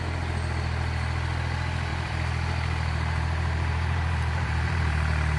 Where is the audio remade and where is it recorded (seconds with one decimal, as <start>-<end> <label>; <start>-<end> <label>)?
0.0-1.9 recorded; 1.9-5.4 remade